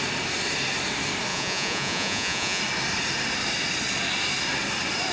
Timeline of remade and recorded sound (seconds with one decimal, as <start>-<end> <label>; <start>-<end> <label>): 0.0-1.3 recorded; 1.3-2.6 remade; 2.6-5.1 recorded